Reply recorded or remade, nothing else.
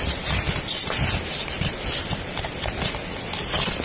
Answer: recorded